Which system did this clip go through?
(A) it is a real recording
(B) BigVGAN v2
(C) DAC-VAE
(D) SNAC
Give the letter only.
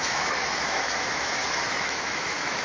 C